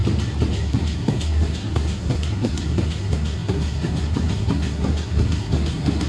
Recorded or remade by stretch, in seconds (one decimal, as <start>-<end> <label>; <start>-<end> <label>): 0.0-0.5 recorded; 0.5-6.1 remade

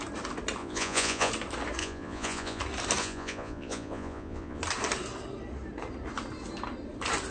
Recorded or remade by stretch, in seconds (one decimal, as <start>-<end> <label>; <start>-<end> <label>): 0.0-0.6 recorded; 0.6-1.3 remade; 1.3-1.8 recorded; 1.8-2.6 remade; 2.6-3.0 recorded; 3.0-4.6 remade; 4.6-7.3 recorded